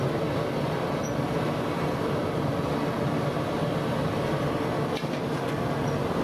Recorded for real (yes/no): yes